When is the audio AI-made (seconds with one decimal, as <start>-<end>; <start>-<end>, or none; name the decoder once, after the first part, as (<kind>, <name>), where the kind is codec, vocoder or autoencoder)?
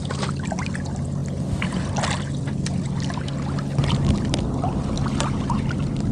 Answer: none